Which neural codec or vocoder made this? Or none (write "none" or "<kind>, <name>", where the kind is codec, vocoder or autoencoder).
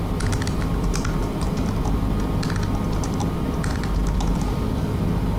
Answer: none